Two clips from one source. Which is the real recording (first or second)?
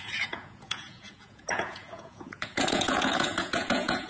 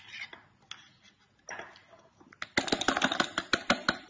second